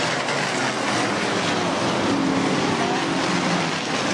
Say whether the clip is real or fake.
real